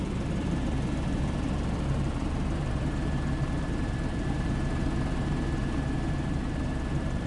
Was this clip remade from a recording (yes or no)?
yes